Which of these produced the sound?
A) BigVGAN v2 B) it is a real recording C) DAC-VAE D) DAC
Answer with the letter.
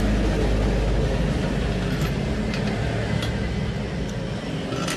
B